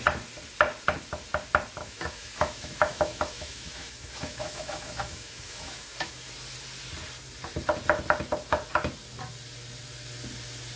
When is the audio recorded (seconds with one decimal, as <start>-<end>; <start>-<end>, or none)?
0.0-1.8; 6.3-10.8